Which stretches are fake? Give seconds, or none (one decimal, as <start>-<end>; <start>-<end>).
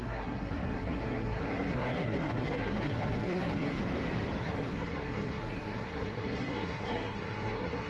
0.0-3.8; 4.4-7.9